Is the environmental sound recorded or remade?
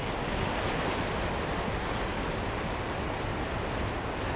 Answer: recorded